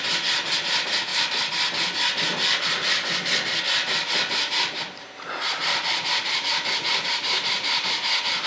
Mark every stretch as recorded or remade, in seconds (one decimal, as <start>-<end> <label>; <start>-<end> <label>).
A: 0.0-4.3 recorded; 4.3-8.5 remade

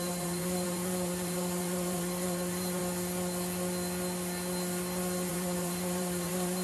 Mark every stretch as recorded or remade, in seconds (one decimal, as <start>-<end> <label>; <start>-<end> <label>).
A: 0.0-2.8 remade; 2.8-5.3 recorded; 5.3-6.6 remade